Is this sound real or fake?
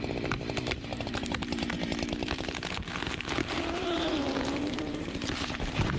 fake